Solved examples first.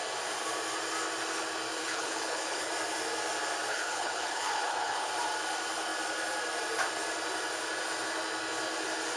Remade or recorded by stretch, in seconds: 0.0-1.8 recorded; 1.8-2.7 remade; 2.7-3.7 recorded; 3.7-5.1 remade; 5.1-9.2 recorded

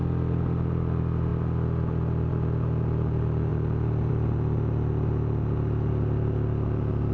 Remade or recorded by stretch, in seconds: 0.0-7.1 recorded